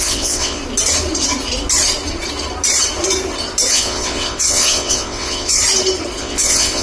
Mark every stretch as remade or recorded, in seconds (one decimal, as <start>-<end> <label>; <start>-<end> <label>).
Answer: 0.0-0.6 remade; 0.6-3.7 recorded; 3.7-5.6 remade; 5.6-6.2 recorded; 6.2-6.8 remade